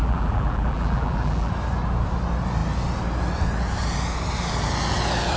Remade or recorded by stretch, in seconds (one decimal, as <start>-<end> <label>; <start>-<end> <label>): 0.0-1.5 remade; 1.5-5.4 recorded